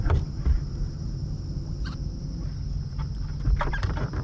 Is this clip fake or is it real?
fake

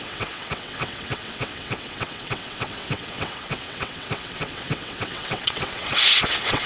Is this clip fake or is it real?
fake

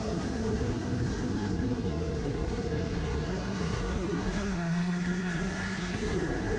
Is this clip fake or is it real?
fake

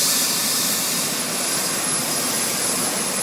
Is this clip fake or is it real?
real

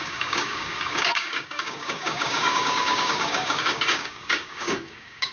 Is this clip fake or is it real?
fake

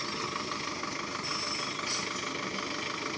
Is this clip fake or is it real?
real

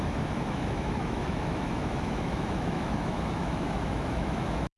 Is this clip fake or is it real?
fake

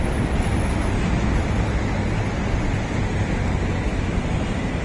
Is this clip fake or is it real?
real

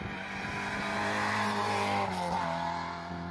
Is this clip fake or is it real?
real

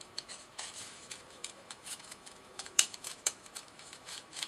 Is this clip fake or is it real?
fake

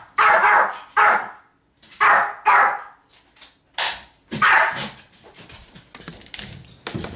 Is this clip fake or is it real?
real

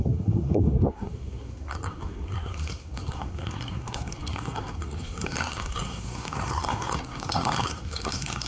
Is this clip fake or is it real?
fake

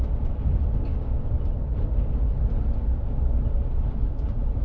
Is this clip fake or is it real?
real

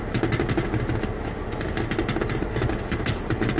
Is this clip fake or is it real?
real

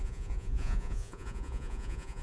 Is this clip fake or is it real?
fake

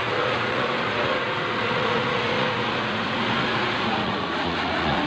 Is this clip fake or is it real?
fake